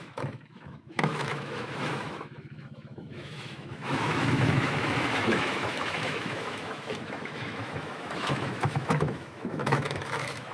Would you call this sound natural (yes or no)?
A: no